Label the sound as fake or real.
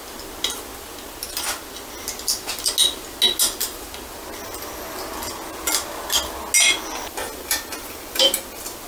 real